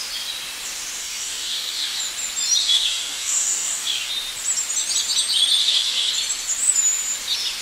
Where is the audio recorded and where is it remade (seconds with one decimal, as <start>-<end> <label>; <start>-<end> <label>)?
0.0-1.0 recorded; 1.0-2.0 remade; 2.0-2.6 recorded; 2.6-4.1 remade; 4.1-5.6 recorded; 5.6-6.1 remade; 6.1-7.6 recorded